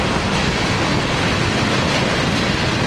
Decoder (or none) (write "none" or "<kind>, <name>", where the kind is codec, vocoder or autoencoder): none